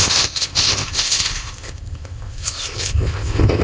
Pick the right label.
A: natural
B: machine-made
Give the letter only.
B